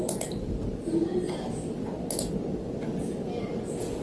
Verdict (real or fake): real